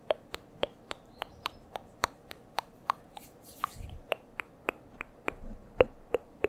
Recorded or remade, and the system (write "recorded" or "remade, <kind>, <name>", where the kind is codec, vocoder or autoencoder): remade, vocoder, BigVGAN v2